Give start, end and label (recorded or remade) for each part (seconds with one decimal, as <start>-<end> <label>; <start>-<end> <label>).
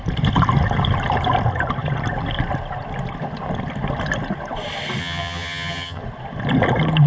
0.0-5.0 recorded; 5.0-6.0 remade; 6.0-7.1 recorded